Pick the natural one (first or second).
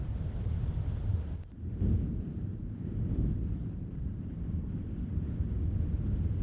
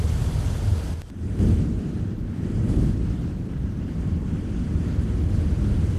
second